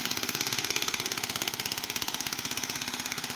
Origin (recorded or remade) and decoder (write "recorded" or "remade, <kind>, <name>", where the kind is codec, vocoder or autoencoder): remade, autoencoder, DAC-VAE